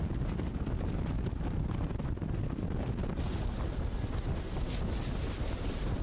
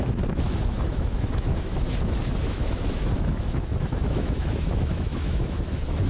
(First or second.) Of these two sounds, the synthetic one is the second